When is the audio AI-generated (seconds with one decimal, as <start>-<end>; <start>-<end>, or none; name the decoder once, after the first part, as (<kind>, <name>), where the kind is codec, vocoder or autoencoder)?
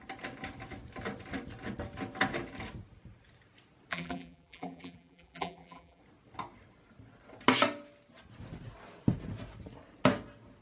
3.9-6.0 (vocoder, BigVGAN v2)